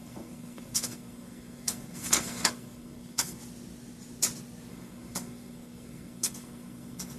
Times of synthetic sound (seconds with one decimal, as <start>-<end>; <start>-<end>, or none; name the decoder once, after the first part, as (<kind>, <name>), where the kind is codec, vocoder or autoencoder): 0.0-3.4 (codec, SNAC); 4.7-7.2